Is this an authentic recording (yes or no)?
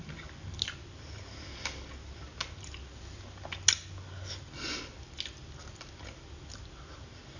yes